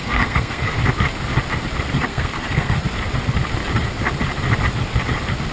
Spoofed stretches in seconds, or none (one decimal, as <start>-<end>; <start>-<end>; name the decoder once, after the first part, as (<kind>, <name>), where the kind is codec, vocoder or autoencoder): 0.0-0.8 (codec, SNAC); 2.1-2.8